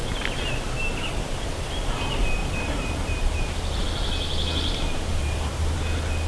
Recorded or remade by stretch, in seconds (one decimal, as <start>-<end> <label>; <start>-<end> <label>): 0.0-2.4 recorded; 2.4-3.8 remade; 3.8-5.1 recorded; 5.1-5.8 remade; 5.8-6.3 recorded